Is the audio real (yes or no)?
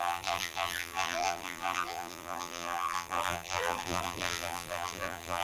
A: no